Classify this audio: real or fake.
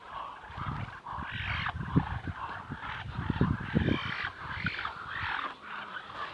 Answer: real